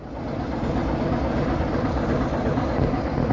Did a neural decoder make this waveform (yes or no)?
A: no